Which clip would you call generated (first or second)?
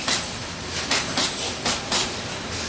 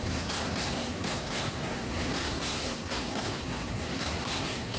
second